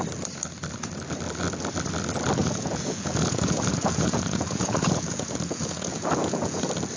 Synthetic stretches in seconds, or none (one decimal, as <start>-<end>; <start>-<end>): 2.4-6.6